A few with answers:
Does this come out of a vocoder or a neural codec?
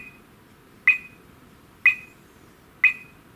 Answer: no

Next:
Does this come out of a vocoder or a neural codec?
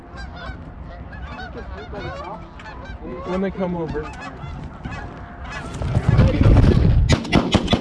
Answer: no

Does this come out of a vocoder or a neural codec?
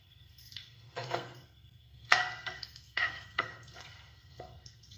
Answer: yes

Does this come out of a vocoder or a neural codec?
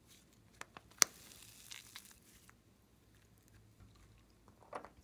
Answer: no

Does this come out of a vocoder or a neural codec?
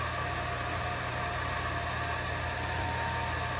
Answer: no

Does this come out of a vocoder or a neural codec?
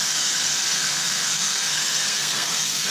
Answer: yes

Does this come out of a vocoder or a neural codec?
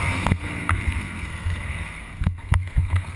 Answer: yes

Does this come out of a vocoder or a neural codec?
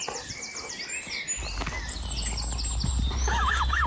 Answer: no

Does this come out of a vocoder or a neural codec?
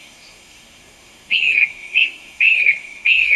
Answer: yes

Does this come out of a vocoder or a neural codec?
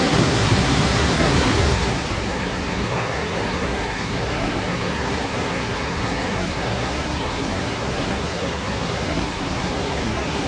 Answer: yes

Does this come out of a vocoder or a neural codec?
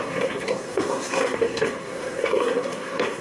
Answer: yes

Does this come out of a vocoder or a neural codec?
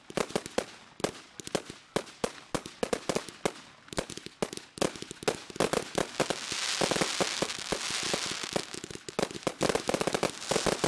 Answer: no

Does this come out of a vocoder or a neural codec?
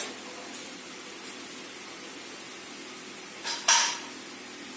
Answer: no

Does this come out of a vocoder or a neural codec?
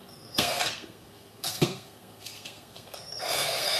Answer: yes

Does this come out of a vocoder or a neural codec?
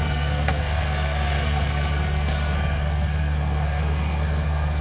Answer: yes